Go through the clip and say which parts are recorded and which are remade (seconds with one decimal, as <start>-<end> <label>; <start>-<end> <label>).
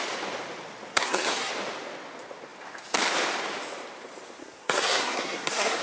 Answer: 0.0-0.9 recorded; 0.9-1.5 remade; 1.5-4.4 recorded; 4.4-5.8 remade